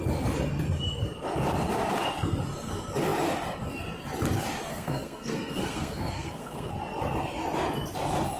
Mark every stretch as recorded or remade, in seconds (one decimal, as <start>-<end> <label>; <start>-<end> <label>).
0.0-4.7 recorded; 4.7-6.7 remade; 6.7-8.4 recorded